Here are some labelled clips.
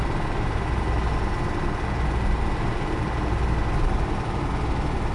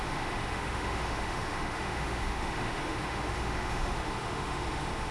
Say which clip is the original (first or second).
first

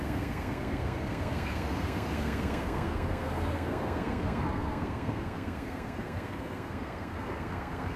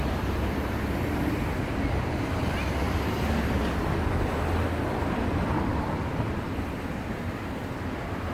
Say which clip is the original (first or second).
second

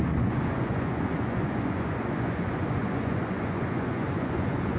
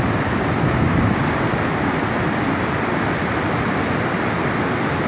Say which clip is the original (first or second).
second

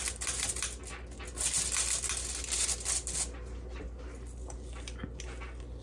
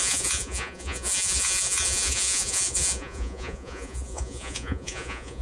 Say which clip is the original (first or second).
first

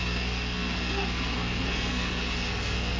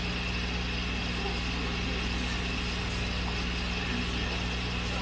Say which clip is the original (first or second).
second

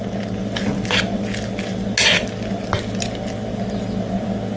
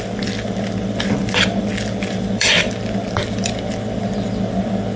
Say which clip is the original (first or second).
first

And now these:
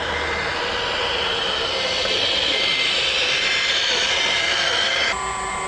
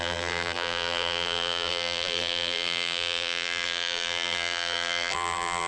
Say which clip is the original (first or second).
first